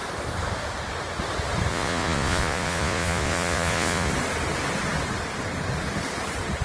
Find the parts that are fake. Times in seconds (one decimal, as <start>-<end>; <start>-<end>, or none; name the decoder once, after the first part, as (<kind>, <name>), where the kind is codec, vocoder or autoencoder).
1.7-4.1 (vocoder, Vocos)